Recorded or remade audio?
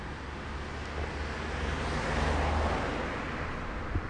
recorded